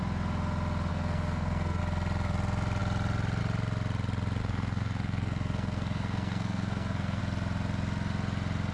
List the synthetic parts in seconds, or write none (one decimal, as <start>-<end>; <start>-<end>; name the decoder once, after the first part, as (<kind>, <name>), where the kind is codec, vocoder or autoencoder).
0.9-1.8 (codec, SNAC); 4.4-7.2